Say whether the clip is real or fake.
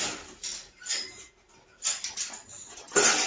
real